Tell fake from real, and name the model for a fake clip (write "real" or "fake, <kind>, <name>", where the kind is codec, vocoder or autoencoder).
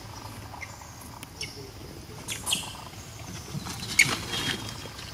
real